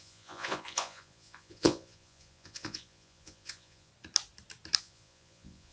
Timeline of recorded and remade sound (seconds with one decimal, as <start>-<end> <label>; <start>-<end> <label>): 0.0-3.9 remade; 3.9-4.8 recorded; 4.8-5.7 remade